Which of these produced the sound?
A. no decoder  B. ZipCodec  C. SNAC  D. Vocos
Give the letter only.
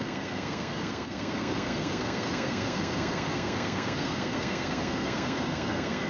C